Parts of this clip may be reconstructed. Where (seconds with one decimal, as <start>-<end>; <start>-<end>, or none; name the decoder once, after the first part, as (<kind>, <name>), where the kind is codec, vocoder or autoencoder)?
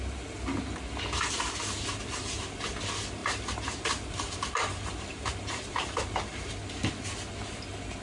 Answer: 3.2-6.5 (vocoder, BigVGAN v2)